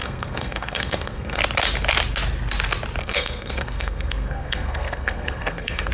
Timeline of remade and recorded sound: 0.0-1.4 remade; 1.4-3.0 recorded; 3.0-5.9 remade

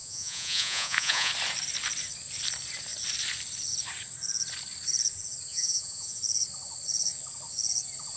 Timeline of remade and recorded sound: 0.0-1.3 remade; 1.3-5.5 recorded; 5.5-6.2 remade; 6.2-8.2 recorded

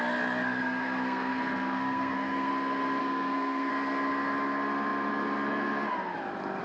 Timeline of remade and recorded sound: 0.0-0.6 recorded; 0.6-2.5 remade; 2.5-3.0 recorded; 3.0-3.7 remade; 3.7-6.6 recorded

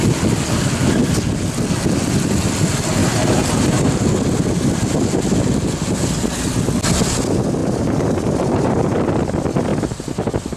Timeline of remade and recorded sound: 0.0-3.0 recorded; 3.0-3.9 remade; 3.9-7.6 recorded; 7.6-9.0 remade; 9.0-10.6 recorded